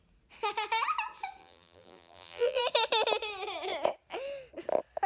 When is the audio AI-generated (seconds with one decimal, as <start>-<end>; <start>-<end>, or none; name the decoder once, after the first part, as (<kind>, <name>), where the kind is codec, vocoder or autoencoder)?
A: 1.4-2.6 (vocoder, BigVGAN v2)